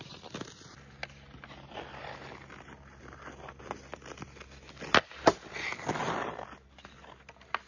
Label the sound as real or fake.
real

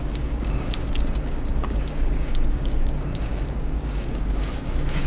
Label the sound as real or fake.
fake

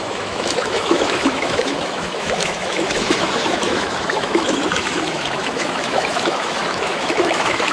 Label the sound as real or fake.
fake